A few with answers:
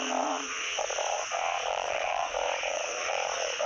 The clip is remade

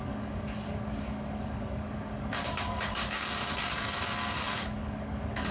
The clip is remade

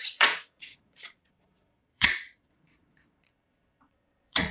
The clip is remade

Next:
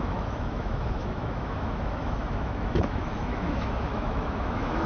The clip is remade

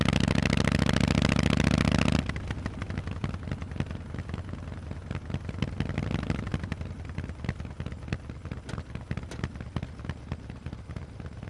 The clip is recorded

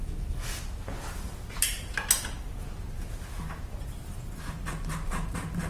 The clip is recorded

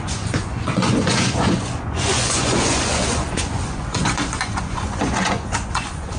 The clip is remade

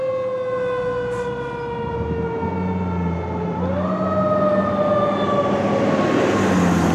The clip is recorded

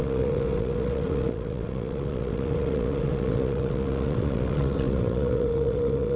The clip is remade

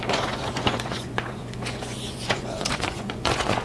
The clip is remade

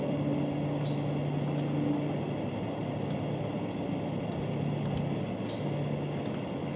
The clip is recorded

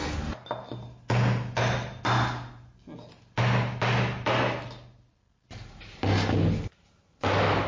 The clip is recorded